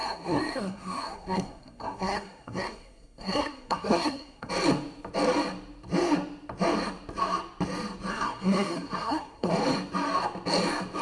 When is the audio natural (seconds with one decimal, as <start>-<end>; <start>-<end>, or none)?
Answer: 4.5-8.1; 9.5-11.0